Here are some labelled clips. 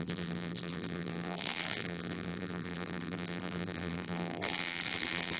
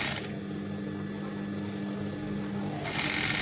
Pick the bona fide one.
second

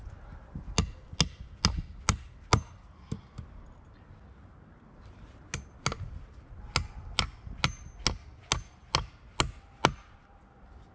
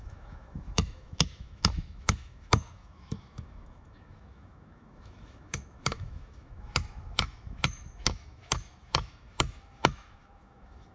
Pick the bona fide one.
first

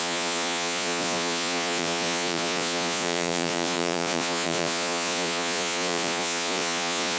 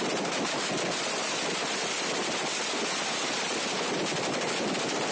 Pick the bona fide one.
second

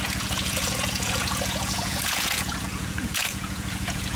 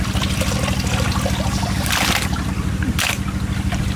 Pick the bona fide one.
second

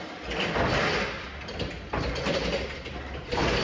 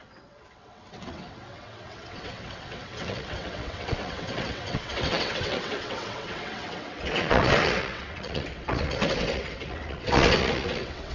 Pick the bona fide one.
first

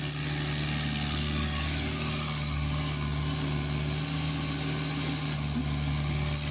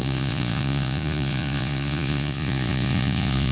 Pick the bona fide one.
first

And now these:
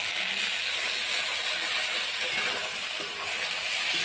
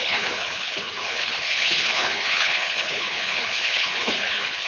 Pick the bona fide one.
first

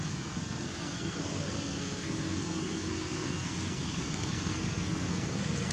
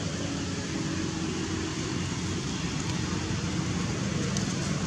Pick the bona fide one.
second